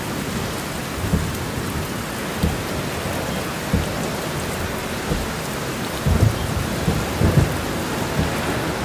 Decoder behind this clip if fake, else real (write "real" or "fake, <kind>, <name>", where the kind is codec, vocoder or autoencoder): real